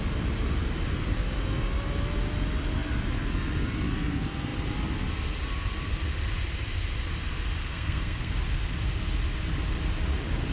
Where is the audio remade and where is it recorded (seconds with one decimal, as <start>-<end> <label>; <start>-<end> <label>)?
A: 0.0-7.6 recorded; 7.6-8.3 remade; 8.3-10.5 recorded